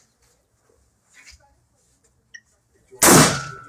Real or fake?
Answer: real